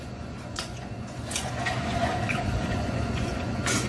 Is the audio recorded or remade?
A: remade